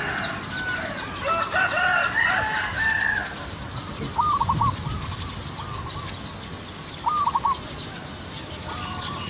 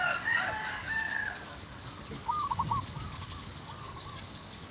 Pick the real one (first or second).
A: first